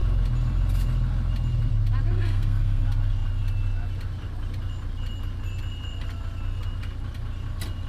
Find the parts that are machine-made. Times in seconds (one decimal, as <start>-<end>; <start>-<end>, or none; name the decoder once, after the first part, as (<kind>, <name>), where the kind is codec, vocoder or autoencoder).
2.1-2.8 (codec, SNAC)